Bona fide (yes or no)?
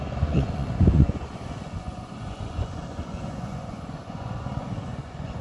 no